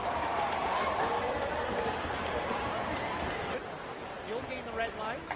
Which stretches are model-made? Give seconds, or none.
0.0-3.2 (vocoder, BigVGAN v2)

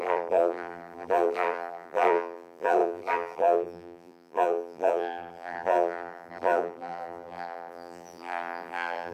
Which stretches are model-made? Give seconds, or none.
0.0-9.1 (vocoder, BigVGAN v2)

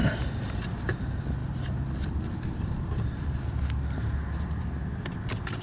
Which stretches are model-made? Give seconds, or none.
0.0-0.9 (vocoder, BigVGAN v2); 1.4-4.6